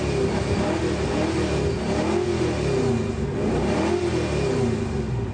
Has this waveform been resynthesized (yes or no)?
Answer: no